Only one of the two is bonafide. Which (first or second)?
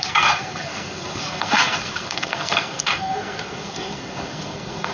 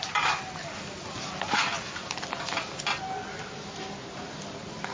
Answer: second